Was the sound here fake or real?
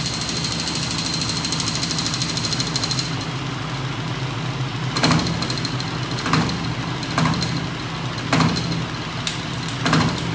real